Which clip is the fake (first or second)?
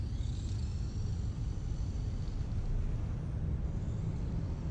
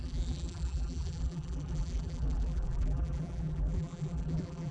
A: second